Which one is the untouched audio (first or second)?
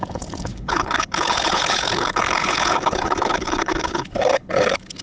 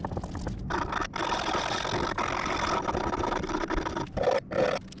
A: second